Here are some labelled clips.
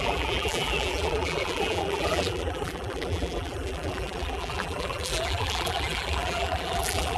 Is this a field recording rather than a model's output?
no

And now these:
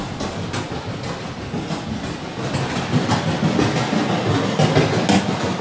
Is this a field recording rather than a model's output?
yes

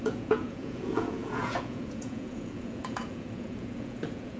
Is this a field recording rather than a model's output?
no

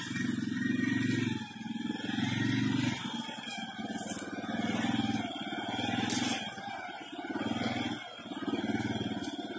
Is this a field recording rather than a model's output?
yes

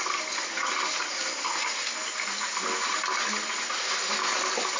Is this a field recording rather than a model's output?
yes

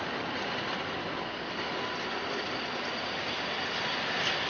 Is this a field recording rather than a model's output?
yes